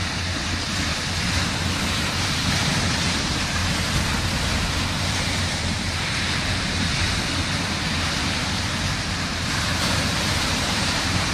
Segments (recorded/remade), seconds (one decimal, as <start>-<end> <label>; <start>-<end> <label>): 0.0-0.9 remade; 0.9-1.8 recorded; 1.8-3.6 remade; 3.6-4.8 recorded; 4.8-11.3 remade